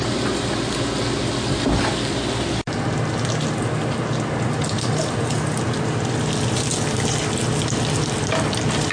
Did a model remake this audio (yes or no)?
no